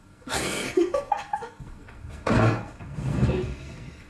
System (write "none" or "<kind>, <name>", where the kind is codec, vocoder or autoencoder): codec, SNAC